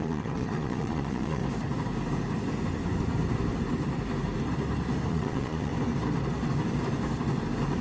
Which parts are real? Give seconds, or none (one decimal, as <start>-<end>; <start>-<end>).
1.4-5.1; 5.7-7.8